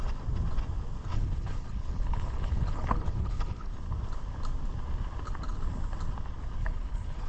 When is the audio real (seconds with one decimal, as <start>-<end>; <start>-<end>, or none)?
0.0-1.1; 3.7-6.6